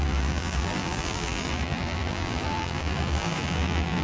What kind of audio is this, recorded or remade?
remade